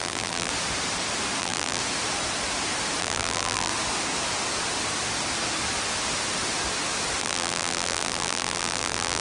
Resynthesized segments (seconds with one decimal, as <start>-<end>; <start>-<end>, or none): 0.0-0.5; 1.4-1.8; 3.0-3.7; 7.2-9.2